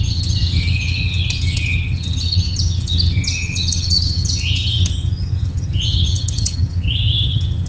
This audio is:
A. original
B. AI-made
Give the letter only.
B